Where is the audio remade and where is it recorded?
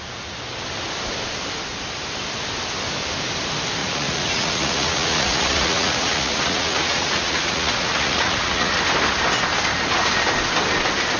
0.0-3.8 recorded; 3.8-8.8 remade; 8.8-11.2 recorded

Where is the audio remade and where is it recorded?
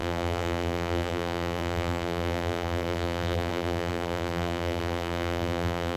0.0-6.0 remade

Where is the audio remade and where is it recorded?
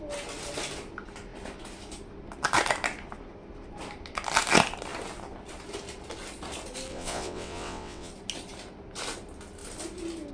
0.0-6.9 recorded; 6.9-8.1 remade; 8.1-10.3 recorded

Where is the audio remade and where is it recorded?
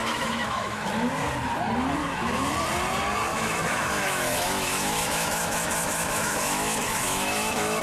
0.0-0.9 remade; 0.9-2.0 recorded; 2.0-2.5 remade; 2.5-3.3 recorded; 3.3-7.8 remade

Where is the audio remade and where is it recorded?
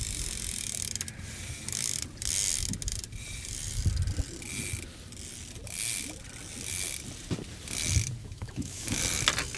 0.0-8.2 recorded; 8.2-9.0 remade; 9.0-9.6 recorded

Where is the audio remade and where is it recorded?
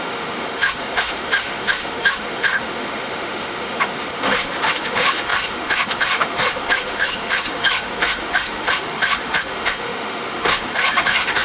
0.0-11.4 remade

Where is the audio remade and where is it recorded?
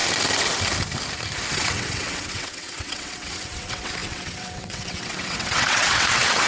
0.0-1.5 recorded; 1.5-6.5 remade